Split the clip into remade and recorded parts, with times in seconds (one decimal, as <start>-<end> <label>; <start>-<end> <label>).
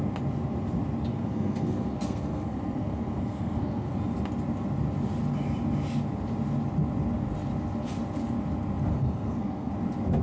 0.0-1.1 recorded; 1.1-3.9 remade; 3.9-8.9 recorded; 8.9-9.7 remade; 9.7-10.2 recorded